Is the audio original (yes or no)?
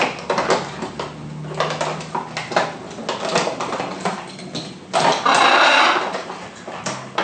yes